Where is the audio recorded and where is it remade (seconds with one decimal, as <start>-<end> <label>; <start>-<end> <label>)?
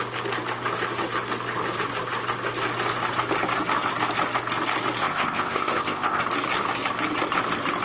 0.0-5.0 recorded; 5.0-6.2 remade; 6.2-7.8 recorded